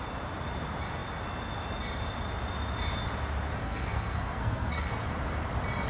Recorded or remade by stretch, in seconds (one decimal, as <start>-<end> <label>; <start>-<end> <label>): 0.0-3.6 recorded; 3.6-4.9 remade; 4.9-5.9 recorded